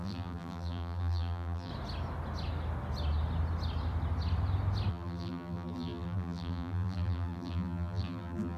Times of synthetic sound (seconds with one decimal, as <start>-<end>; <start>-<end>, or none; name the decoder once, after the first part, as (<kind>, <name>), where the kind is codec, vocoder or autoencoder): 0.0-1.7 (vocoder, BigVGAN v2); 4.9-8.6